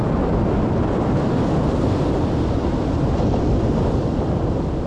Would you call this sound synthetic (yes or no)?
no